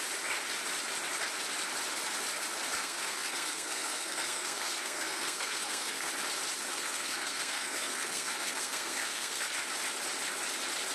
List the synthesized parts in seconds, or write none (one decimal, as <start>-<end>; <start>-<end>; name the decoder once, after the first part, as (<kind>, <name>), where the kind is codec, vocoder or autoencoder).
2.8-6.1 (codec, SNAC); 6.7-9.4